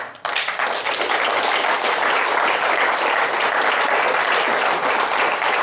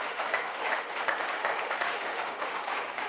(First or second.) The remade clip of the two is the second